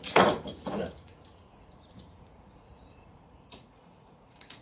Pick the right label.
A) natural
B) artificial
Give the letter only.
B